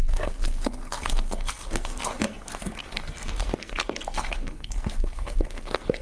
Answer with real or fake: fake